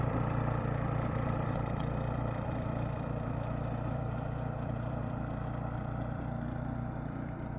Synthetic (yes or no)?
yes